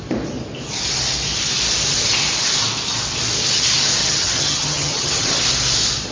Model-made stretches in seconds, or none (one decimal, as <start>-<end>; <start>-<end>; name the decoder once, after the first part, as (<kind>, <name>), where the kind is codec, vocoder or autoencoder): 4.0-5.4 (vocoder, HiFi-GAN)